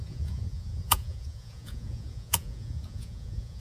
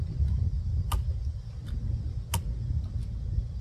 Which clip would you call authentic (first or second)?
second